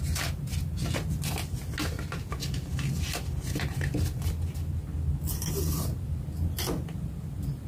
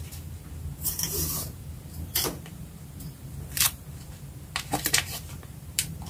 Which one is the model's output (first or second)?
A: second